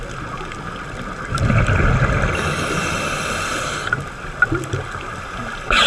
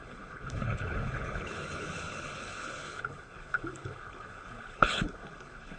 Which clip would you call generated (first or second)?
second